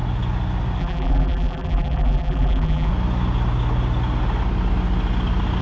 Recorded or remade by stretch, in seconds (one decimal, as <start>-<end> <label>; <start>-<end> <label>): 0.0-0.8 recorded; 0.8-2.9 remade; 2.9-5.6 recorded